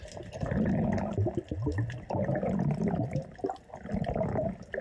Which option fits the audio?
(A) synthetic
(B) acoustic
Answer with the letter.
B